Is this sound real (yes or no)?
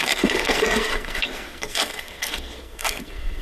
no